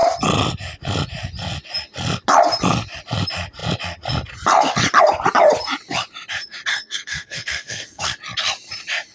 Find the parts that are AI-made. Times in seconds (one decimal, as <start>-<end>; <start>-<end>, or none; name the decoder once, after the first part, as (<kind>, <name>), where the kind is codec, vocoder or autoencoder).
6.7-8.0 (codec, SNAC)